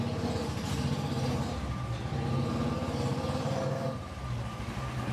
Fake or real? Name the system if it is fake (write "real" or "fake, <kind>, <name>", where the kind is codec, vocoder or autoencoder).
real